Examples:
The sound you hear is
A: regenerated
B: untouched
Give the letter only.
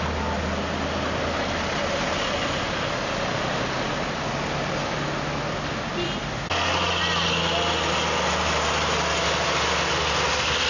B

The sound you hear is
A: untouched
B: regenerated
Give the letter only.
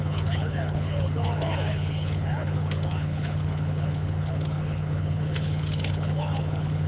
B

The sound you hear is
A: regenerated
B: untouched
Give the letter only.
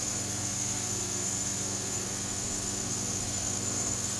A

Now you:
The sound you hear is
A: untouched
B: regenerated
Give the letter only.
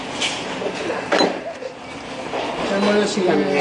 A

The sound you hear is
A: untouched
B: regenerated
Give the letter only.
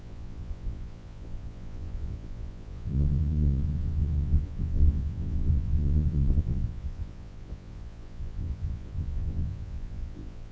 B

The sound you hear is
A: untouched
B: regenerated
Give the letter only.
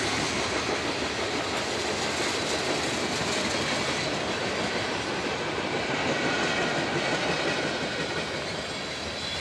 A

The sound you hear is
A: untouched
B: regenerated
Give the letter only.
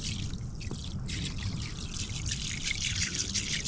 A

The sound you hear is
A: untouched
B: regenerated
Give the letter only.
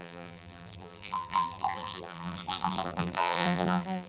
B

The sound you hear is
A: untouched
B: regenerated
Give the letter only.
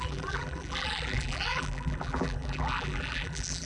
B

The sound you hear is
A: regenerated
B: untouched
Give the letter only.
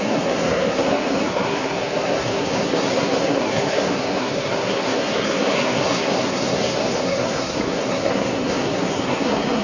A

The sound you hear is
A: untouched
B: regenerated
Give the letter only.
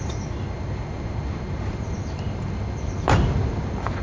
A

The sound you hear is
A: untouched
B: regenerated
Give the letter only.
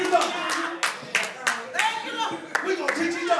A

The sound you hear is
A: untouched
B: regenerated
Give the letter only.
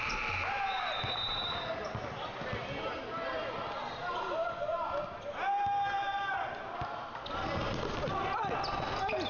A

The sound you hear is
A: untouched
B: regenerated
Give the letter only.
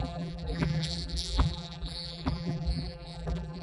B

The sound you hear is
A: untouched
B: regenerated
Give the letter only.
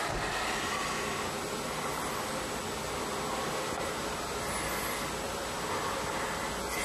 A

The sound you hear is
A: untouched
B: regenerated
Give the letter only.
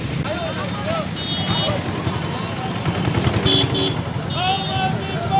A